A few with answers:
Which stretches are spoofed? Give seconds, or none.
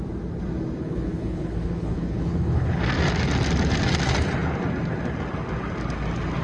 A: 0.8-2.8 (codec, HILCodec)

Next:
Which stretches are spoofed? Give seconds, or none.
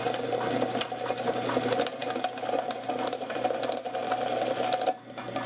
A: none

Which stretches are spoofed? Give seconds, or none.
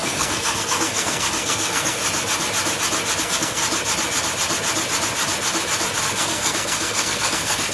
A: 0.0-2.0 (codec, SNAC); 3.2-3.6; 6.0-7.7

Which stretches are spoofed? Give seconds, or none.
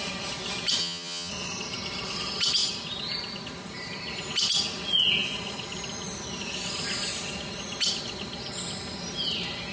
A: 0.8-1.3 (vocoder, HiFi-GAN)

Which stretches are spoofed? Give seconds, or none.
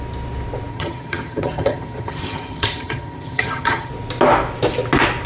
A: 0.7-3.9 (vocoder, HiFi-GAN)